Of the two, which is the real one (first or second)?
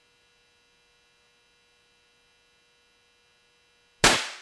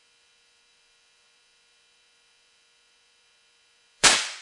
first